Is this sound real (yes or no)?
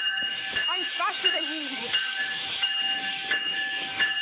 no